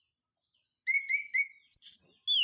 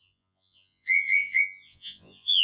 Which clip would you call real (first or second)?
first